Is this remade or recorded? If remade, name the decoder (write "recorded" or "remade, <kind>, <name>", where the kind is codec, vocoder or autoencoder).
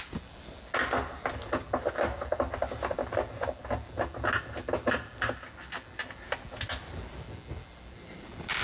recorded